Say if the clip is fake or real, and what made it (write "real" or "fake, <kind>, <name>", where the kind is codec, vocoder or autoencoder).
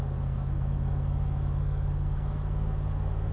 fake, codec, SNAC